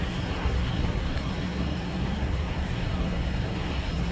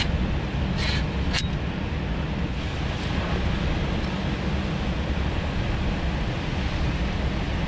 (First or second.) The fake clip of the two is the first